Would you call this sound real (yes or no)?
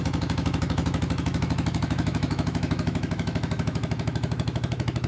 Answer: no